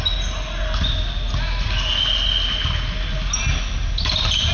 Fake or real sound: real